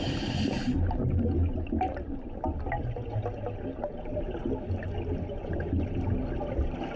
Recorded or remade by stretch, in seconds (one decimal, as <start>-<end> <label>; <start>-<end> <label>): 0.0-7.0 recorded